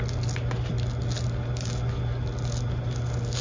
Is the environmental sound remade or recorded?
recorded